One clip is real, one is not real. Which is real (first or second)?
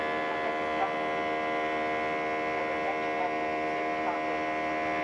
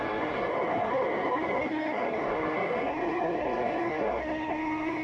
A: first